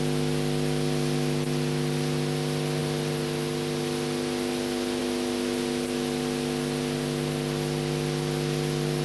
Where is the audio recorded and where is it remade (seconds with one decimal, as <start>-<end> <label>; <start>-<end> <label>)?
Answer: 0.0-9.0 recorded